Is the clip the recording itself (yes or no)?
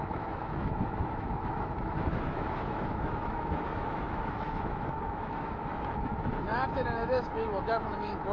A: no